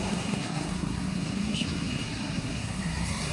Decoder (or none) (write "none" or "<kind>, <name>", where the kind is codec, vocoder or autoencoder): codec, SNAC